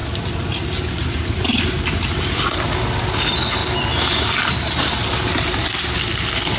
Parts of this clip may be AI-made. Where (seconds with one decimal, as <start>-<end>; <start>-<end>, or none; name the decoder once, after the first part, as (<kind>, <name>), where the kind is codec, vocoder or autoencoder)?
none